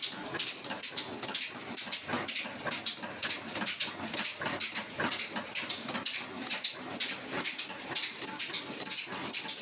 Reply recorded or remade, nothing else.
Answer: recorded